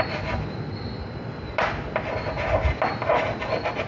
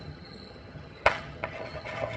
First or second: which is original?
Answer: first